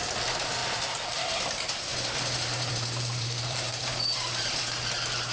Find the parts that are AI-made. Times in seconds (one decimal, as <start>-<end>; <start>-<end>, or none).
0.6-1.2; 1.9-4.8